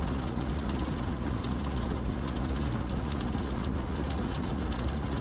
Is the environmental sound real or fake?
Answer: fake